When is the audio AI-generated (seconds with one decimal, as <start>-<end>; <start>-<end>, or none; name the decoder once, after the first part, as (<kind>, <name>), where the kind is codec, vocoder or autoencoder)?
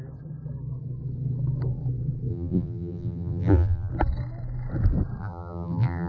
2.3-3.9 (vocoder, BigVGAN v2); 5.2-6.1